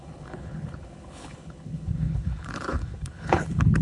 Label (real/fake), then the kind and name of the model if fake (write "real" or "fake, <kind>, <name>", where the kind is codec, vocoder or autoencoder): fake, codec, HILCodec